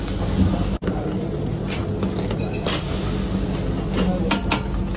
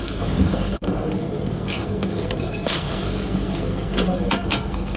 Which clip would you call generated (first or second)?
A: second